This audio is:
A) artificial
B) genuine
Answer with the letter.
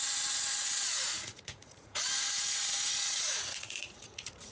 A